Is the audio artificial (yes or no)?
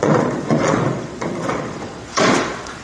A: yes